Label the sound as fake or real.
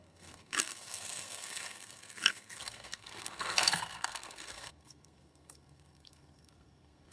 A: fake